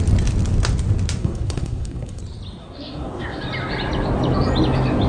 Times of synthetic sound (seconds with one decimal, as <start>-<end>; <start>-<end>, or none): 1.2-2.2; 2.6-3.4

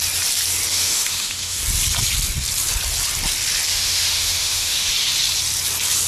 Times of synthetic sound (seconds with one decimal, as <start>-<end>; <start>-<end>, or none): 0.7-1.6; 3.7-4.9

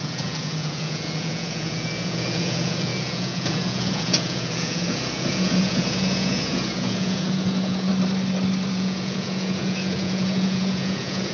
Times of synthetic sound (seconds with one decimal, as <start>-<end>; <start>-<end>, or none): 0.0-7.9; 8.7-11.3

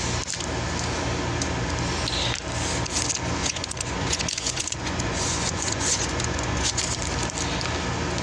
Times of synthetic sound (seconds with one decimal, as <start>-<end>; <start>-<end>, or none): 3.4-6.8